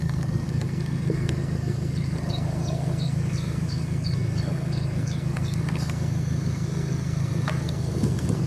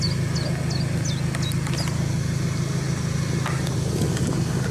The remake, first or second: first